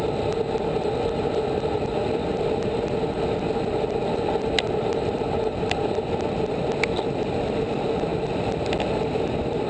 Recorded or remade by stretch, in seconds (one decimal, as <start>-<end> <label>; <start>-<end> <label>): 0.0-9.7 recorded